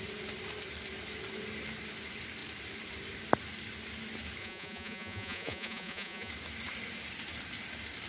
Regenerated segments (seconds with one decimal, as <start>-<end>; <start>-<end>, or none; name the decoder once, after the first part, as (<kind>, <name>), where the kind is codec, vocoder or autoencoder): 4.4-6.3 (vocoder, Vocos)